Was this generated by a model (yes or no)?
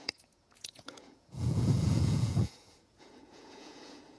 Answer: yes